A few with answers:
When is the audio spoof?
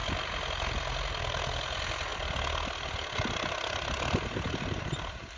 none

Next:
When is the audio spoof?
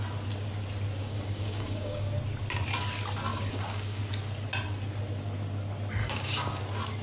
1.0-2.1; 3.3-4.0; 6.0-6.6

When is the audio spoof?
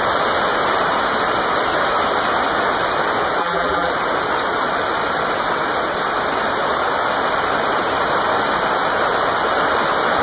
3.4-3.9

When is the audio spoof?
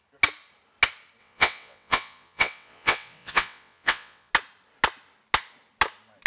1.2-4.3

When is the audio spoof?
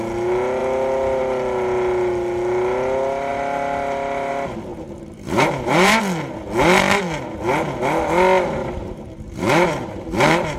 4.7-6.0; 8.6-9.7